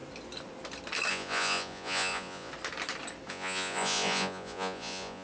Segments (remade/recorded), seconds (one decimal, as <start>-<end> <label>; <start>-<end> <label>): 0.0-1.1 recorded; 1.1-2.5 remade; 2.5-3.3 recorded; 3.3-5.2 remade